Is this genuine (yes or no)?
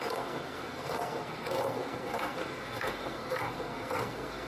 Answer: no